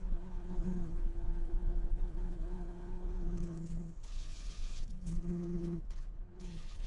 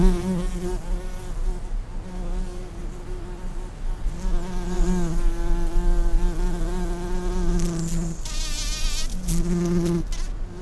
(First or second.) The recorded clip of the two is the second